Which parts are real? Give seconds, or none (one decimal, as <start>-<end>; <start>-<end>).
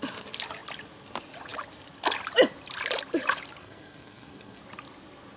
0.0-3.6; 4.6-5.4